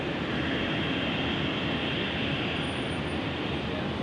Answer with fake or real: real